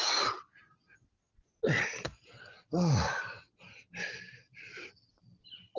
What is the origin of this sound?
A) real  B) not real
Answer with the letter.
A